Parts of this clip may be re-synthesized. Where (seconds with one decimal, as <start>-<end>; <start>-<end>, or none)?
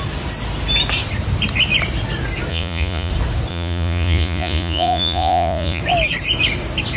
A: 2.5-3.1; 3.5-5.8